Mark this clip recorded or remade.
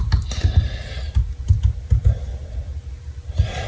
recorded